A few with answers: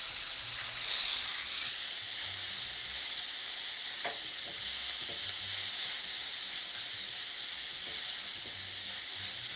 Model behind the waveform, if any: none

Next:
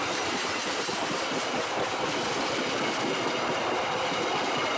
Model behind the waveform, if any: none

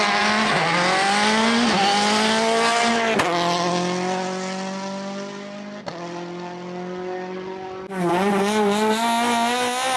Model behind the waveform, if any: none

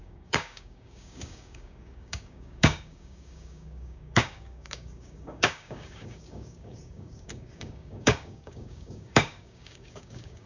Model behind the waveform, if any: codec, DAC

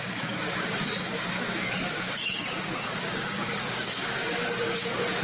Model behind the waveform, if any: codec, DAC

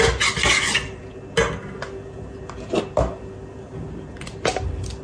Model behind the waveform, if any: none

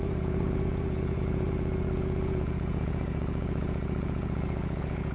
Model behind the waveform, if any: vocoder, Vocos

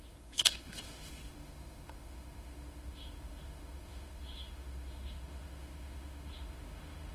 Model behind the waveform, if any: autoencoder, DAC-VAE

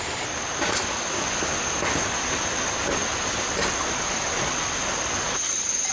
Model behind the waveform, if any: none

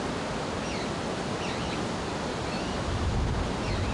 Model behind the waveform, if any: none